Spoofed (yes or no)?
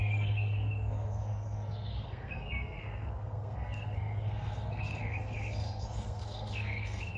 yes